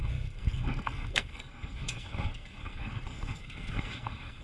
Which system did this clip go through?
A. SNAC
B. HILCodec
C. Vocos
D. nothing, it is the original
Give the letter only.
A